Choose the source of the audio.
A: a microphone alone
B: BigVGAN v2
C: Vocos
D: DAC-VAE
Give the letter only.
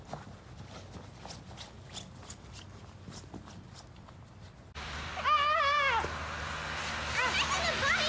A